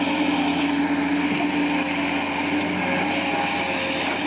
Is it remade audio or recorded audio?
recorded